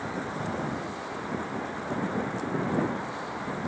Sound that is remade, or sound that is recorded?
recorded